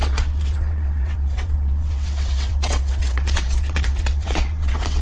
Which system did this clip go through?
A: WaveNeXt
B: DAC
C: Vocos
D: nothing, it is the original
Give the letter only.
A